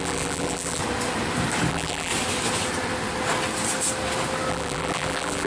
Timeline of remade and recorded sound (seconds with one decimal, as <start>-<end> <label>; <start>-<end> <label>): 0.0-0.8 remade; 0.8-1.7 recorded; 1.7-2.1 remade; 2.1-4.5 recorded; 4.5-5.5 remade